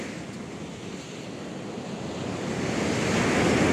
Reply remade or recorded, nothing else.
recorded